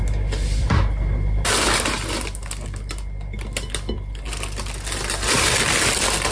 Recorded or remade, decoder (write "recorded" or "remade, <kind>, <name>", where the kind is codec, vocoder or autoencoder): recorded